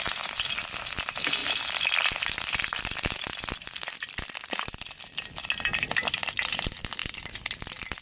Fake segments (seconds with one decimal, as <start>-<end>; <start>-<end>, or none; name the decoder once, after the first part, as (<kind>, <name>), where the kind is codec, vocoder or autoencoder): 1.4-2.5 (vocoder, BigVGAN v2); 3.3-4.2